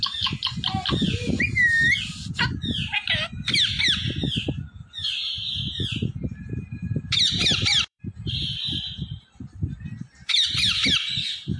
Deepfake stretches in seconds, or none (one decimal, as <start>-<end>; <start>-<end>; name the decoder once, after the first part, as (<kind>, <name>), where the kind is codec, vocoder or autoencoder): 7.7-11.6 (vocoder, BigVGAN v2)